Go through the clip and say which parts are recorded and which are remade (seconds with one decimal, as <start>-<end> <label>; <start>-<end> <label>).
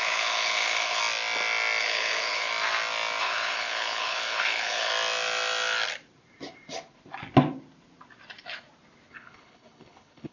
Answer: 0.0-1.0 remade; 1.0-1.8 recorded; 1.8-2.5 remade; 2.5-3.2 recorded; 3.2-4.9 remade; 4.9-9.1 recorded; 9.1-10.3 remade